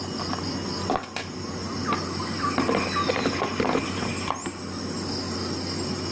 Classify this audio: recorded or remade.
recorded